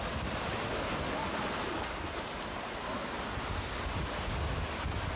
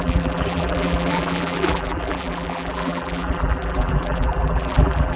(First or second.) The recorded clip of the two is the first